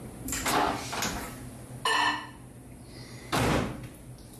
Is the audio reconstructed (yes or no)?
no